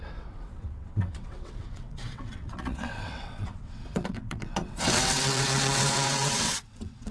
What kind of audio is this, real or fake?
fake